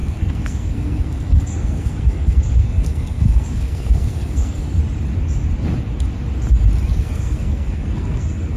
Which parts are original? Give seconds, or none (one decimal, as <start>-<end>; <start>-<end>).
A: 4.8-7.0